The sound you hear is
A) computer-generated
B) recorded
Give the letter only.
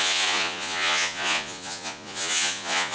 A